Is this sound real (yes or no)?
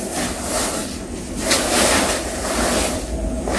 yes